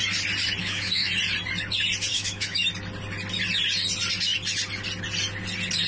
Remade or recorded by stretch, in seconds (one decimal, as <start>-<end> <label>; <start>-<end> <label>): 0.0-0.6 recorded; 0.6-1.1 remade; 1.1-2.1 recorded; 2.1-2.7 remade; 2.7-5.9 recorded